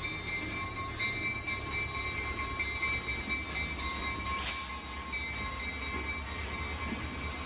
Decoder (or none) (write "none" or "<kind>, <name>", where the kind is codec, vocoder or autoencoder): none